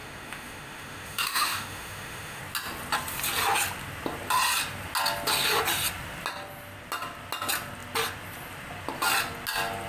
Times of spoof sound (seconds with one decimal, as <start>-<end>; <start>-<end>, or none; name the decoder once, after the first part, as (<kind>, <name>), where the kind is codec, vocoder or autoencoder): 0.0-2.4 (autoencoder, DAC-VAE)